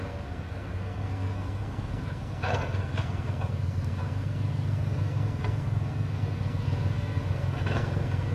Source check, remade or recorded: remade